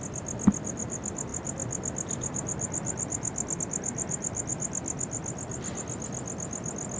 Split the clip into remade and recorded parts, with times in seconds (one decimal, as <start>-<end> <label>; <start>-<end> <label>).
0.0-7.0 recorded